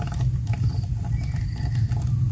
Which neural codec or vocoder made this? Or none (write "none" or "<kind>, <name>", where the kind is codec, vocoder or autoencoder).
none